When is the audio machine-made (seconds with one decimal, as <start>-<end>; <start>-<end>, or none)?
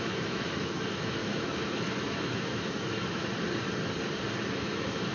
0.0-3.3; 4.4-5.1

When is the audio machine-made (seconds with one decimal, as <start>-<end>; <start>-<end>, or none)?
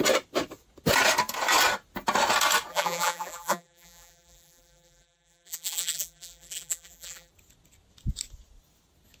2.7-7.3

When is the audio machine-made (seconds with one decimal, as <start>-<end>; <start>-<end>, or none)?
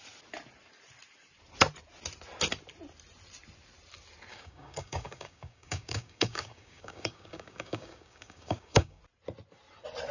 4.3-9.0